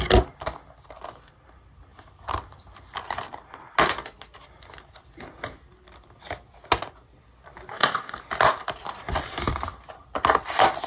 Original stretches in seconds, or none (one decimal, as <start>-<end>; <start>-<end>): 0.0-7.7; 8.2-10.9